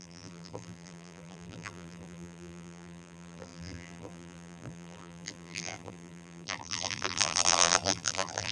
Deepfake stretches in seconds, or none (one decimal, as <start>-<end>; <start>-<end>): 0.0-8.5